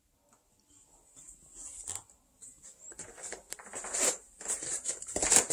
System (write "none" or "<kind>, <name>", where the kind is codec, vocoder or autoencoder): none